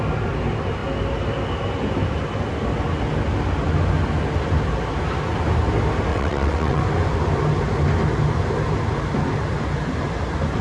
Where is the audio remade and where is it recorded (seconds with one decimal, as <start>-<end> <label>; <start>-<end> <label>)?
0.0-6.1 recorded; 6.1-6.8 remade; 6.8-10.6 recorded